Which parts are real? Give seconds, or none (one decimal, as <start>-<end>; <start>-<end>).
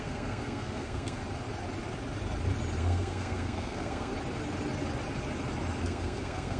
1.2-2.8; 4.1-5.8